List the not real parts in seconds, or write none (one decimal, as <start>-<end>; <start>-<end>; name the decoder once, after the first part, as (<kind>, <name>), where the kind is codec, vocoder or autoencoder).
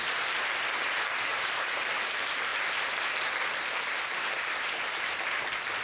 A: 1.3-2.0 (vocoder, BigVGAN v2)